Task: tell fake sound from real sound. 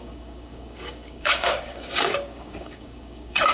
fake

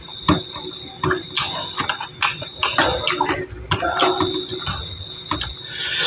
real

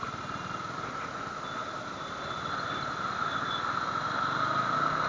real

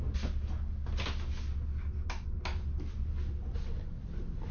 real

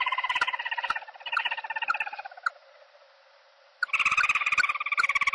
real